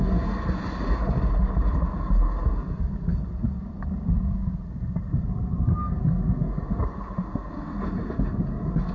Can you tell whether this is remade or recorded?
recorded